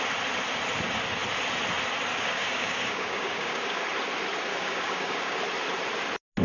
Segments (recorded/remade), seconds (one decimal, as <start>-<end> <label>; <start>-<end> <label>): 0.0-2.1 recorded; 2.1-3.8 remade; 3.8-4.5 recorded; 4.5-5.4 remade; 5.4-6.4 recorded